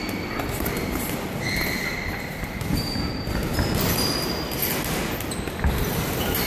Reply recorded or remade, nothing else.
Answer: recorded